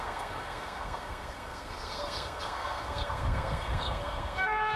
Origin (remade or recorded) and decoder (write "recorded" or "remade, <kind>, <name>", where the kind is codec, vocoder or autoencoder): remade, codec, SNAC